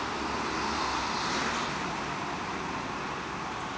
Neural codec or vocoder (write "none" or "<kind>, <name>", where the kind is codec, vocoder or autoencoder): none